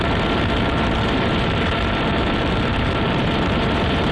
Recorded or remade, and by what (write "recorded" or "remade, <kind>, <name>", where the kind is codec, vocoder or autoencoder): remade, vocoder, BigVGAN v2